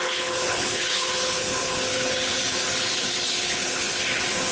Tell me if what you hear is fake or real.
fake